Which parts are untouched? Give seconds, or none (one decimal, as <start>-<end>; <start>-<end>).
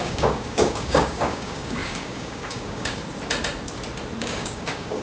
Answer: 3.0-4.2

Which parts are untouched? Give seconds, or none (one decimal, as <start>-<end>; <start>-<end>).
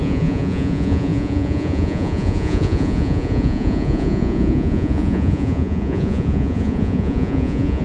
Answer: none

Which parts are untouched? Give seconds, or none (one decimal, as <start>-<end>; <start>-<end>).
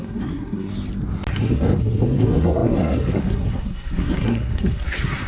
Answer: 0.7-1.3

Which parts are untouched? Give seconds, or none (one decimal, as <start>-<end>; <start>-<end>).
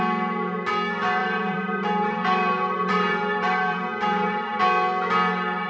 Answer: 0.0-1.2; 4.6-5.7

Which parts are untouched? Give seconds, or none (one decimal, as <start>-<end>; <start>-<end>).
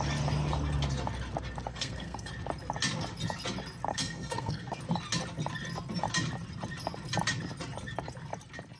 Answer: 0.0-1.7; 2.3-3.9; 4.8-8.8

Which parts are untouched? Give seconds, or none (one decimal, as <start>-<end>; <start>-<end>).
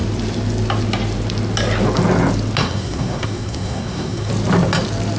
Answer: 0.0-2.6; 4.3-5.2